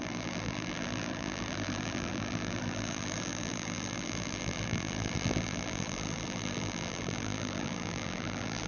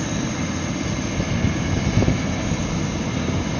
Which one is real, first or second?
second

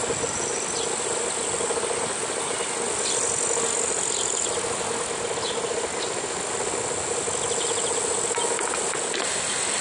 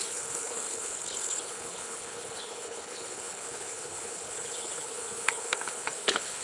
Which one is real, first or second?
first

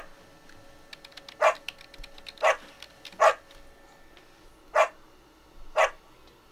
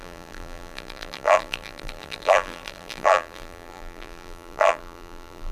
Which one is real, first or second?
first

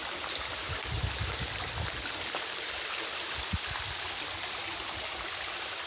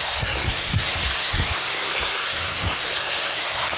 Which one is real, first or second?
first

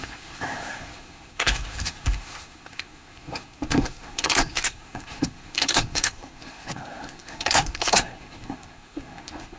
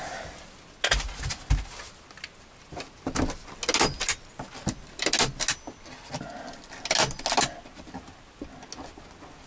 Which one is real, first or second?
second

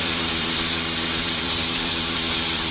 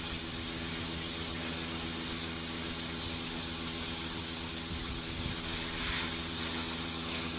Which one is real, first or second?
second